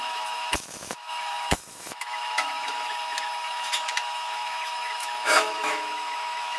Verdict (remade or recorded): remade